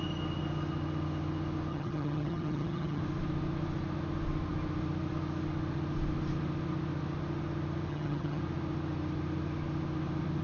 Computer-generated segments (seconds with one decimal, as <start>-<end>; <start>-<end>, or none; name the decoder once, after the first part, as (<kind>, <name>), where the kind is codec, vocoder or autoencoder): 1.7-3.0 (vocoder, HiFi-GAN); 7.9-8.4